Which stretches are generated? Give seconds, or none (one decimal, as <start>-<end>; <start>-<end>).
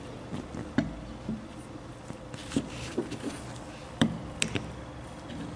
none